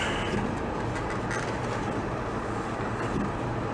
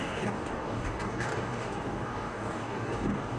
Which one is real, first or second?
first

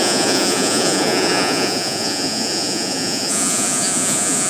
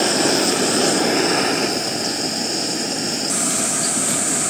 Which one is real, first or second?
second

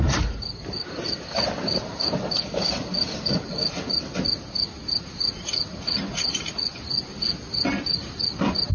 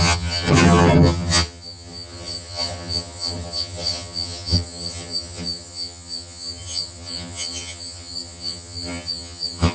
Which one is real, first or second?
first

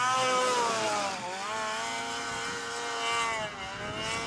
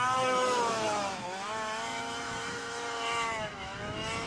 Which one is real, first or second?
first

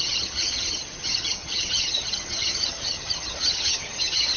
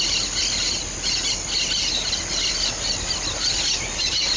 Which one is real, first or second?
second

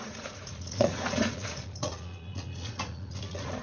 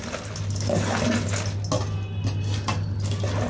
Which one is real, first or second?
second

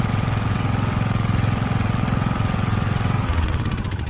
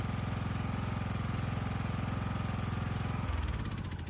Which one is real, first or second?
second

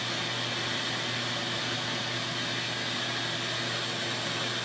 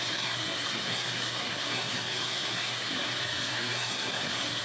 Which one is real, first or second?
first